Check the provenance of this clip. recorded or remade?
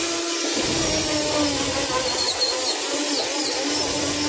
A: recorded